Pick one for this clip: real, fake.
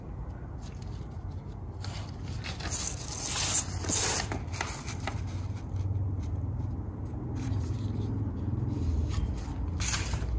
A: real